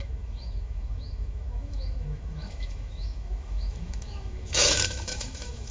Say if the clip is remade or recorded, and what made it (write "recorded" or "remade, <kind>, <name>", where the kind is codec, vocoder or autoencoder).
remade, autoencoder, DAC-VAE